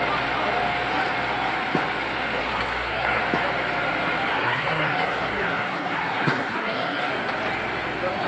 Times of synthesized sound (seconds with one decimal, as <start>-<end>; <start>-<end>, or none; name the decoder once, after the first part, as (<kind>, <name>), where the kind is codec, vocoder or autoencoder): 2.4-3.2 (codec, SNAC); 4.3-7.1